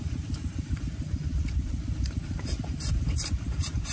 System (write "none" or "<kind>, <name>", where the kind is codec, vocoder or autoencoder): vocoder, BigVGAN v2